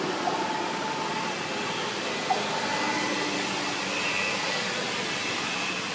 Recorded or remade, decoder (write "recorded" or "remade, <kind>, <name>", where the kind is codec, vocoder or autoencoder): recorded